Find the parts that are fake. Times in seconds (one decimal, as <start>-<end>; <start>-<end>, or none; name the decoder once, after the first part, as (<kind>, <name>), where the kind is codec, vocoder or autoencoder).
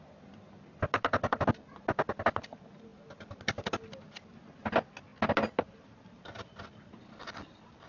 none